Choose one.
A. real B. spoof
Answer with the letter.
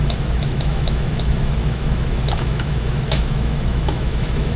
B